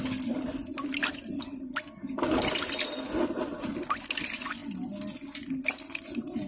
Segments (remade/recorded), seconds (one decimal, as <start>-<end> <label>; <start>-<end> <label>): 0.0-6.5 recorded